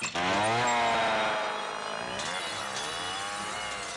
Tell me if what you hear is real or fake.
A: real